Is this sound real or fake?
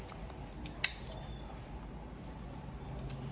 real